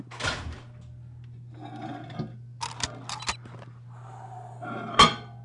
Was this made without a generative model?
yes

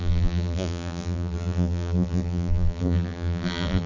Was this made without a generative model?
no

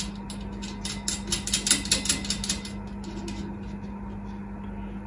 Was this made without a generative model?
yes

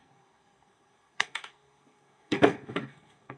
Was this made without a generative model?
no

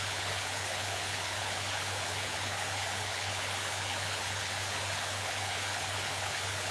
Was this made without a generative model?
no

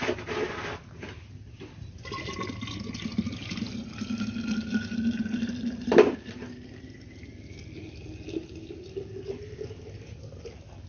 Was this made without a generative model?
yes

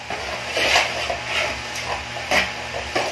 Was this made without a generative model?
yes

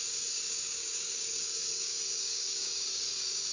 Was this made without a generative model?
no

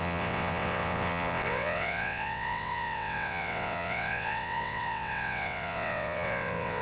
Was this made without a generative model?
no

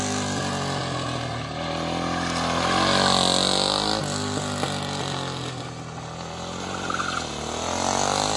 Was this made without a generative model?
yes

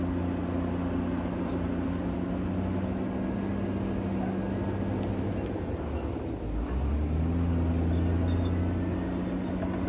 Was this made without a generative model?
yes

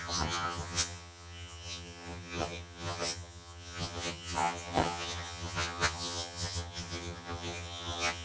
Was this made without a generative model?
no